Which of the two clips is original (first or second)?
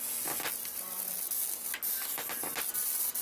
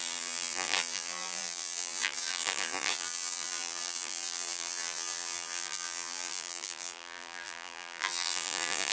first